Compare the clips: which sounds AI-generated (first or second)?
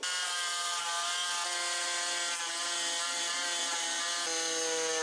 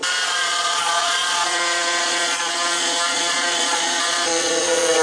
second